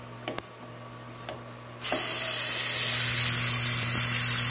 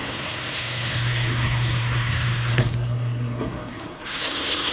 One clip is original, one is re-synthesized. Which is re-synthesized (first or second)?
second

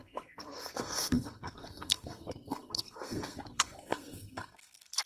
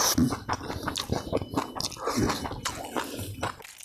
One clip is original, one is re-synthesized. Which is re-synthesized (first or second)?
first